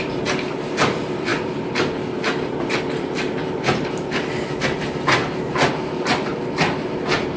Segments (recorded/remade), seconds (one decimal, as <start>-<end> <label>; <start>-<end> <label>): 0.0-6.3 remade; 6.3-7.4 recorded